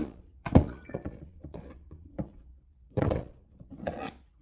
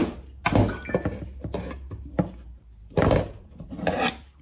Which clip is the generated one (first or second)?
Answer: first